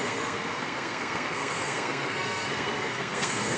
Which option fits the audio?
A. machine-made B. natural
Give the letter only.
A